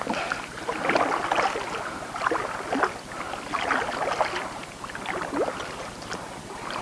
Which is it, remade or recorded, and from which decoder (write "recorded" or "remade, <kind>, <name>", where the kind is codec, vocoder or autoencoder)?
recorded